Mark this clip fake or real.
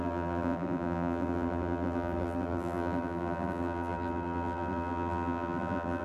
fake